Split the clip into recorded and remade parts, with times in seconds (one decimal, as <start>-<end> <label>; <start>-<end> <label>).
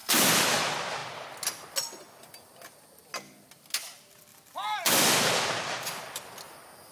0.0-0.6 remade; 0.6-4.3 recorded; 4.3-6.4 remade; 6.4-6.9 recorded